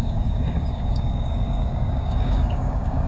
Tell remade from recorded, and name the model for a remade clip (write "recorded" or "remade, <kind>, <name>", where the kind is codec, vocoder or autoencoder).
remade, codec, DAC